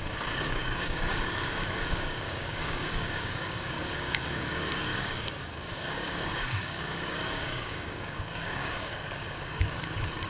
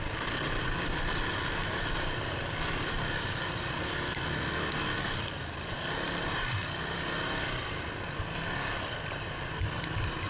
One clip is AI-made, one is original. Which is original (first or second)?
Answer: second